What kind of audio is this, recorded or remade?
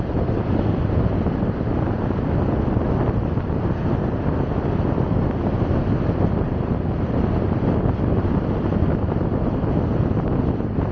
recorded